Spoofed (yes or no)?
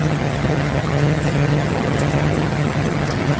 yes